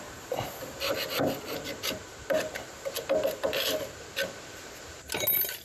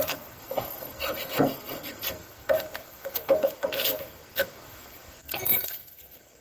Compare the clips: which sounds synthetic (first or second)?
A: second